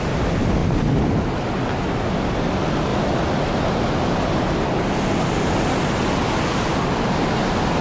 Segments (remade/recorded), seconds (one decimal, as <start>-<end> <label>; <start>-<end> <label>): 0.0-7.8 recorded